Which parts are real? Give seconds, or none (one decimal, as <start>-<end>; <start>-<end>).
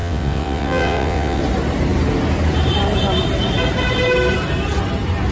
1.4-5.3